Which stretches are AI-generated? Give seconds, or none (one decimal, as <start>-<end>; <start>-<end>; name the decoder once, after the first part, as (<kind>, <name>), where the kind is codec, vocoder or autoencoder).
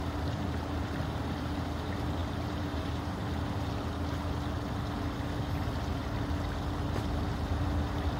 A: 0.0-3.2 (vocoder, BigVGAN v2)